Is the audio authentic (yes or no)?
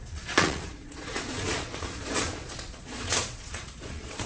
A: no